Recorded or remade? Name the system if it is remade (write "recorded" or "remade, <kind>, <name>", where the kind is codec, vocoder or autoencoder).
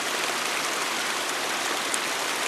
recorded